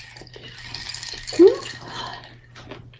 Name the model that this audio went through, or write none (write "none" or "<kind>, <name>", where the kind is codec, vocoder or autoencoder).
none